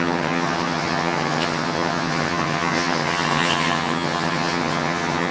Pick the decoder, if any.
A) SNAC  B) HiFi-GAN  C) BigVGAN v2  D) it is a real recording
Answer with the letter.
B